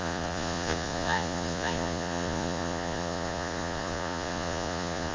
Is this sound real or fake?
fake